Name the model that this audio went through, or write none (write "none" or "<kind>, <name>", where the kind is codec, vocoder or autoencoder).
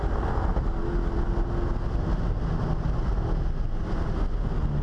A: none